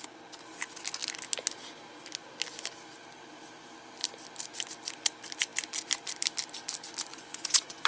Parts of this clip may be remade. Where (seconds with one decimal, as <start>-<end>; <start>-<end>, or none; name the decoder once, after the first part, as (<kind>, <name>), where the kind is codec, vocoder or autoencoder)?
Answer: 7.1-7.9 (vocoder, Vocos)